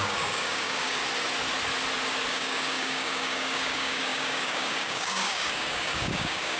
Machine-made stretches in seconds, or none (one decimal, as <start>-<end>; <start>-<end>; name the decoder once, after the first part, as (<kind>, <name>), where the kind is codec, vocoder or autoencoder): 0.0-1.0 (codec, DAC); 2.3-6.6